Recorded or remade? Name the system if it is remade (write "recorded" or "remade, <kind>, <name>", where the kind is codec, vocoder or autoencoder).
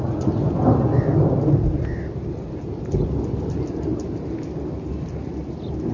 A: recorded